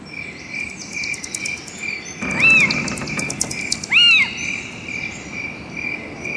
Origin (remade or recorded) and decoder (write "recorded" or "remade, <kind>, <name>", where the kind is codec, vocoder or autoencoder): recorded